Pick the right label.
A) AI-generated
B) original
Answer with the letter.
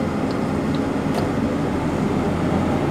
B